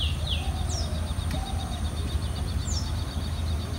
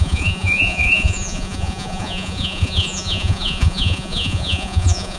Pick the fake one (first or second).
second